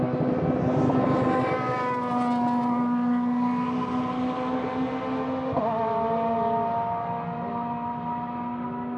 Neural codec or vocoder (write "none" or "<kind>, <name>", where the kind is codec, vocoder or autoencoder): none